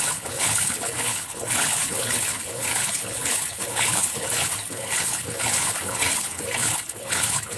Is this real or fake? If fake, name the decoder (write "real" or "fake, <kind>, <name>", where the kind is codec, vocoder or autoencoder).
fake, codec, HILCodec